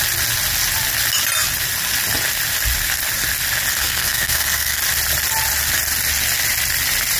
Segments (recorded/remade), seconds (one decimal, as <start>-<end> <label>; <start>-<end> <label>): 0.0-3.8 recorded; 3.8-4.8 remade; 4.8-7.2 recorded